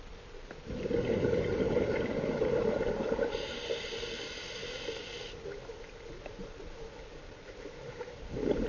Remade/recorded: remade